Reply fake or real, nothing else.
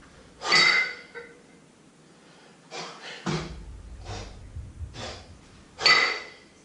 real